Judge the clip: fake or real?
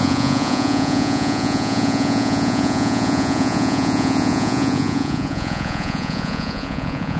fake